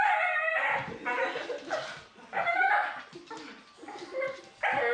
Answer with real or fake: real